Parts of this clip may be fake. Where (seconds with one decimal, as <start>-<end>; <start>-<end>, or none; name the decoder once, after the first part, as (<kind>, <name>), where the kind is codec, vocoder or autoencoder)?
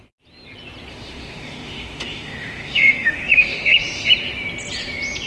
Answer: 0.9-4.1 (autoencoder, DAC-VAE)